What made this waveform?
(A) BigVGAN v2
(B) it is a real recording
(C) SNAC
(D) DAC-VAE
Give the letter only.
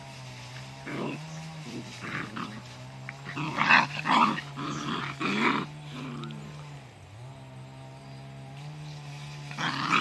B